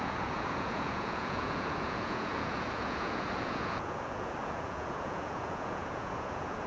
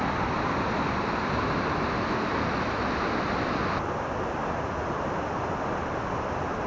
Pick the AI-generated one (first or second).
first